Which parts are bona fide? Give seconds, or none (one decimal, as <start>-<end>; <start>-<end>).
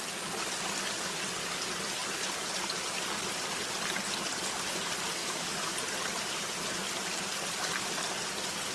0.0-5.2; 5.7-8.7